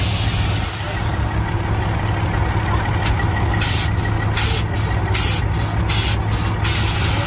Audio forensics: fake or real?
real